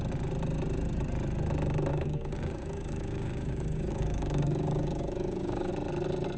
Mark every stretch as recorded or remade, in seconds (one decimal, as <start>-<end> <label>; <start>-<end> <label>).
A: 0.0-1.9 recorded; 1.9-5.7 remade; 5.7-6.4 recorded